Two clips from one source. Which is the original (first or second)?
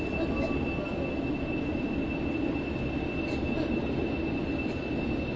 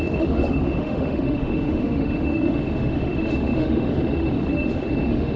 first